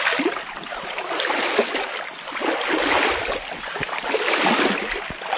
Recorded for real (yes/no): yes